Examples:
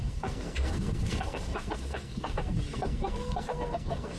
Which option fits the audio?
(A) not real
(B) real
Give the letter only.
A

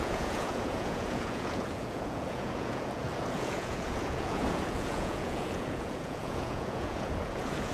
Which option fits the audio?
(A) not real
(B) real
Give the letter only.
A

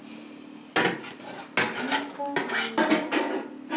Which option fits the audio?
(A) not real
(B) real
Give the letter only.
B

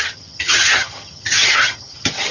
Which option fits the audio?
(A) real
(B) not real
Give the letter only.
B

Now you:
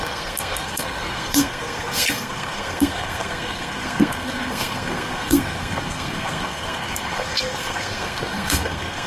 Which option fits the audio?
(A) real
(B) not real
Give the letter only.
B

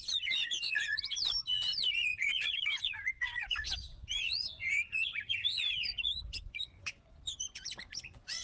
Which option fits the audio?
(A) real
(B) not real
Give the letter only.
B